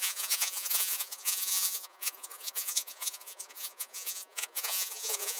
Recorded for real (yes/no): no